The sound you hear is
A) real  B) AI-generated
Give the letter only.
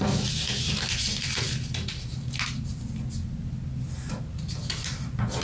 A